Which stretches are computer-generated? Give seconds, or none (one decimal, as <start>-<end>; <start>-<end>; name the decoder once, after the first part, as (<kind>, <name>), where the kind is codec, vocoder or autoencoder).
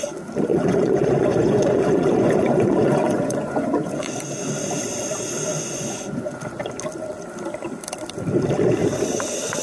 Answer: 0.5-4.2 (vocoder, Vocos); 5.5-6.4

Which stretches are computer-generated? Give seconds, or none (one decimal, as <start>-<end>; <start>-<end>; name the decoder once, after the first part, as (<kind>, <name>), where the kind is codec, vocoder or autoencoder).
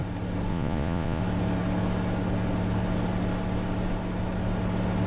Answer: 0.5-1.2 (vocoder, Vocos)